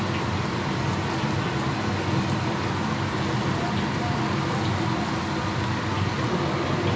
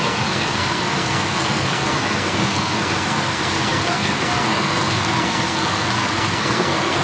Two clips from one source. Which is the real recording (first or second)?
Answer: first